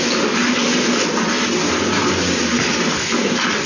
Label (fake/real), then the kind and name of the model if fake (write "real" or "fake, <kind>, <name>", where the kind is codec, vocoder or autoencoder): real